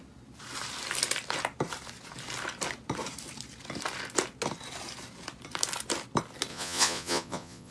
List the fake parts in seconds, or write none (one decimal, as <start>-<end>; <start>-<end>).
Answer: 6.5-7.7